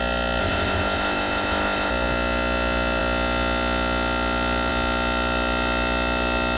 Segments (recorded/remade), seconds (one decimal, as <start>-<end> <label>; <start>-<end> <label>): 0.0-0.4 recorded; 0.4-1.9 remade; 1.9-6.6 recorded

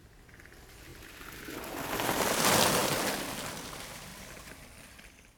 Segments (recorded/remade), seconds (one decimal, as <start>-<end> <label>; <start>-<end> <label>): 0.0-2.8 recorded; 2.8-3.5 remade; 3.5-4.1 recorded; 4.1-5.4 remade